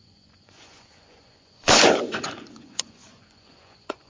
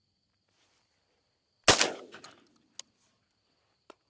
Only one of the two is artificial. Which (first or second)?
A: first